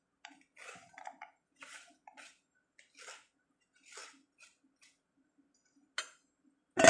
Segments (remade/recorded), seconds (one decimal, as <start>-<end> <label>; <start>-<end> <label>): 0.0-6.9 recorded